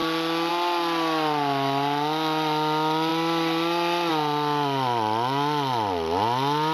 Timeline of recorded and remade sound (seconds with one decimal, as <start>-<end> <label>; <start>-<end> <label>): 0.0-6.7 recorded

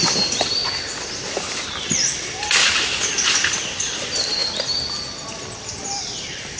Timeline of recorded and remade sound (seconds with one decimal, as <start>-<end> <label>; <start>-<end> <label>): 0.0-4.4 remade; 4.4-5.3 recorded; 5.3-6.6 remade

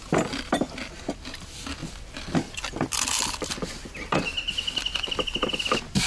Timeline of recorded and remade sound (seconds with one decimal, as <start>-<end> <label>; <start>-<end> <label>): 0.0-6.1 recorded

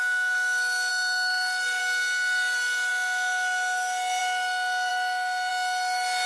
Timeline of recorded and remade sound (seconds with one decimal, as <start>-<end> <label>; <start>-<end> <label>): 0.0-0.9 recorded; 0.9-1.8 remade; 1.8-6.3 recorded

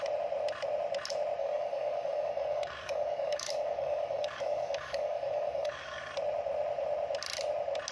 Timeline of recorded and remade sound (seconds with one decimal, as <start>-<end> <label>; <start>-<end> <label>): 0.0-1.4 recorded; 1.4-6.1 remade; 6.1-7.9 recorded